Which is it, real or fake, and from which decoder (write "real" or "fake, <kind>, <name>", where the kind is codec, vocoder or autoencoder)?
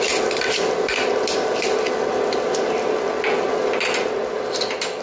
real